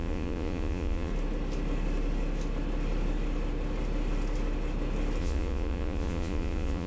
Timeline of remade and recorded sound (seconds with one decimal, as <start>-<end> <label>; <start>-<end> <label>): 0.0-1.1 remade; 1.1-5.2 recorded; 5.2-6.9 remade